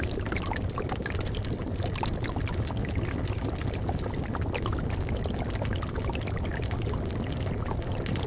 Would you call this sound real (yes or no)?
yes